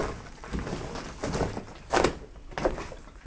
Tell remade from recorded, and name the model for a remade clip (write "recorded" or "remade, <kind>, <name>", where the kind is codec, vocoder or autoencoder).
recorded